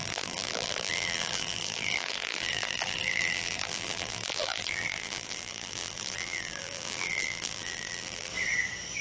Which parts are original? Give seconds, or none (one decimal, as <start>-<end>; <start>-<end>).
8.3-9.0